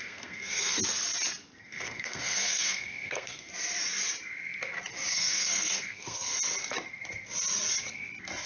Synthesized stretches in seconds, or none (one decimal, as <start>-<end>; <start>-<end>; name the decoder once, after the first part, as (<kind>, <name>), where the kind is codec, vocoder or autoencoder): 0.0-0.8 (codec, SNAC); 1.6-3.5; 5.1-6.3